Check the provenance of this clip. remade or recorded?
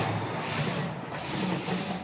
recorded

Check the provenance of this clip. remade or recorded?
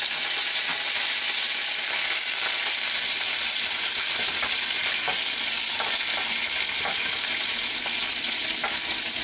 recorded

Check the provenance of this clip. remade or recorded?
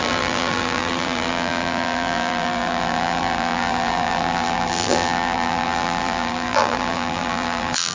remade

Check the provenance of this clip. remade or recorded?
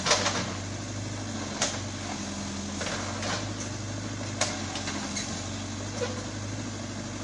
recorded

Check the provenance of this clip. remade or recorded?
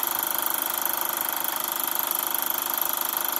recorded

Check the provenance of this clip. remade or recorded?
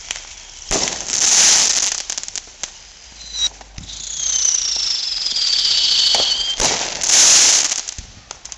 recorded